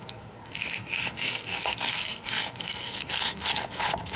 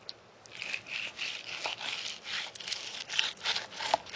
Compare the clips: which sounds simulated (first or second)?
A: first